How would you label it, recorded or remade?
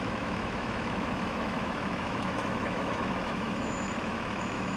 remade